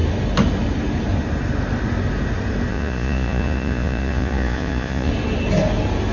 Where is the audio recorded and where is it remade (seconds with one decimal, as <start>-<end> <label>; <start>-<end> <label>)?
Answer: 0.0-2.7 recorded; 2.7-5.1 remade; 5.1-6.1 recorded